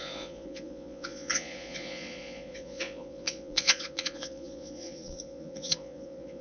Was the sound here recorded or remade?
remade